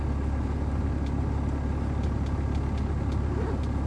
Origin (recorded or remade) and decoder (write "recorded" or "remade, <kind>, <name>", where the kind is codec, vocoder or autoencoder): recorded